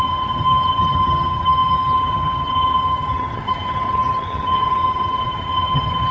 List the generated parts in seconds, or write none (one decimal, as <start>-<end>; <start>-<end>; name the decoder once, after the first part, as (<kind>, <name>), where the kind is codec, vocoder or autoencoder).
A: 0.0-6.1 (vocoder, HiFi-GAN)